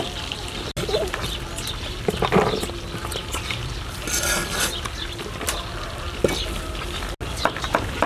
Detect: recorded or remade recorded